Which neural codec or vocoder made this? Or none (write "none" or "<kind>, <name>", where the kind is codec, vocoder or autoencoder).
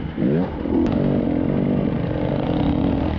none